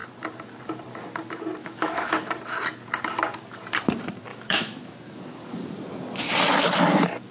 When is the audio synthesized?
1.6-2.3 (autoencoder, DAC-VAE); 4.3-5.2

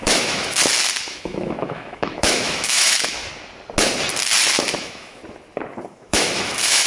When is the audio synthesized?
0.0-0.6 (autoencoder, DAC-VAE); 1.1-3.2; 4.8-5.2; 5.9-6.9

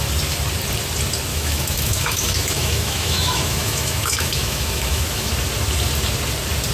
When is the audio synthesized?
1.3-5.3 (autoencoder, DAC-VAE)

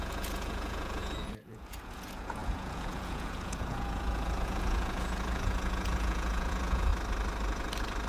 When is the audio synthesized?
0.0-6.9 (vocoder, Vocos)

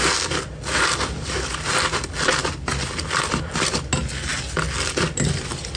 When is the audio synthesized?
none

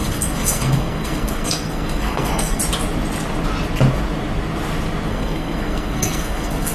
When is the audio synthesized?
0.0-2.6 (codec, SNAC); 5.1-6.7